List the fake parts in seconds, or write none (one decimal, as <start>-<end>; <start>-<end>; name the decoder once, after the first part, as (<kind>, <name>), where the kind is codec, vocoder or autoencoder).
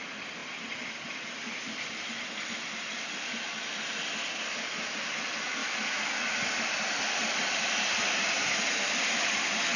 5.6-8.7 (vocoder, BigVGAN v2)